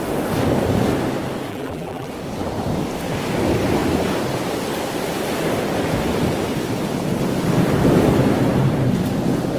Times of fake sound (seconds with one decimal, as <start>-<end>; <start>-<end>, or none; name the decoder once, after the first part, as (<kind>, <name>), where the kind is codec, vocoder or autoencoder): 1.5-2.1 (vocoder, BigVGAN v2)